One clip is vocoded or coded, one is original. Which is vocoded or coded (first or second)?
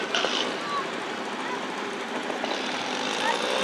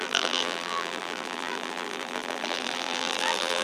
second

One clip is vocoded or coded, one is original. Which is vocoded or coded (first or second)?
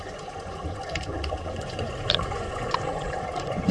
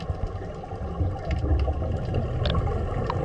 first